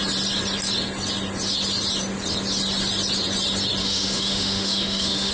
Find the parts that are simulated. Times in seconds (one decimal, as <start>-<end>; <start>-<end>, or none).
3.8-5.3